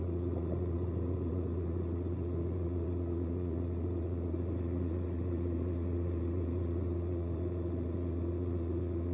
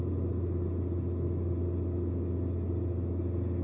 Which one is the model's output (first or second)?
first